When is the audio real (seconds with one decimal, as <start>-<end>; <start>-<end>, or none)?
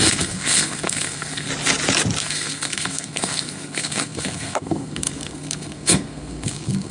1.5-2.2